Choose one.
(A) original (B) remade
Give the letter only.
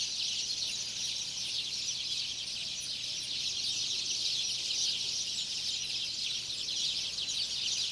A